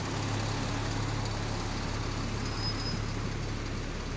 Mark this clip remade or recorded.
recorded